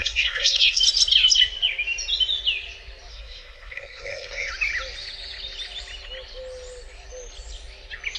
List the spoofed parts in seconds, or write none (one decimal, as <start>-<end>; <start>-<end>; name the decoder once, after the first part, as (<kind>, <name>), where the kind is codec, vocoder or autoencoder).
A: 0.0-0.8 (codec, SNAC); 3.1-4.5